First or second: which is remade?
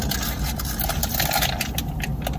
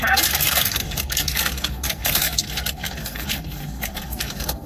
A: second